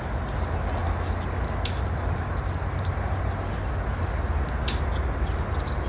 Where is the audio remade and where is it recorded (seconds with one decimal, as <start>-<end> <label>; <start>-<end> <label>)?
0.0-5.9 recorded